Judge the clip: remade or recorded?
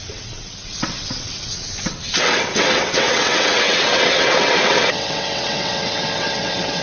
remade